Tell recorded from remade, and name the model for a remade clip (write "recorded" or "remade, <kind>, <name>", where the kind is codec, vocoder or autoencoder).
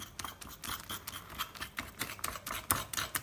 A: recorded